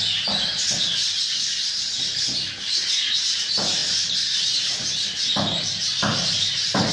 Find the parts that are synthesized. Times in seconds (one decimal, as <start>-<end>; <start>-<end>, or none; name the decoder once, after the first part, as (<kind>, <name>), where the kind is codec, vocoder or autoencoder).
1.0-1.7 (vocoder, BigVGAN v2); 3.8-4.8; 6.1-6.9